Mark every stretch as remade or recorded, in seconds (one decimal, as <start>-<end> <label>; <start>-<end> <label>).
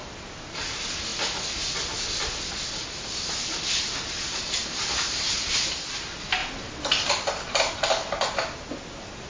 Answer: 0.0-9.3 recorded